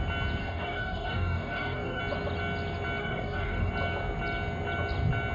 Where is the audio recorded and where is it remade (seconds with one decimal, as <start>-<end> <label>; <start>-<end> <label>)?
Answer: 0.0-0.4 recorded; 0.4-2.0 remade; 2.0-3.0 recorded; 3.0-3.7 remade; 3.7-5.3 recorded